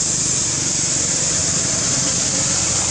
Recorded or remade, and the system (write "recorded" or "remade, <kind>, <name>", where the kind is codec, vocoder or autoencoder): recorded